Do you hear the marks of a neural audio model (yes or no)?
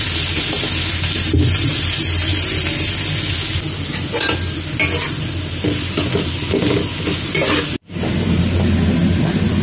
no